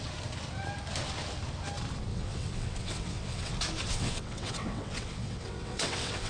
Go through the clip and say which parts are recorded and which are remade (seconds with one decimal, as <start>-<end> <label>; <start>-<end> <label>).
0.0-2.1 recorded; 2.1-3.5 remade; 3.5-3.9 recorded; 3.9-6.3 remade

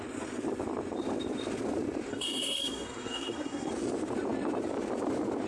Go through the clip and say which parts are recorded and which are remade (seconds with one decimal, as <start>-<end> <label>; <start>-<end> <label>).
0.0-2.1 recorded; 2.1-3.7 remade; 3.7-5.5 recorded